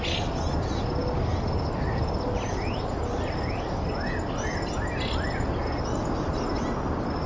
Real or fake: real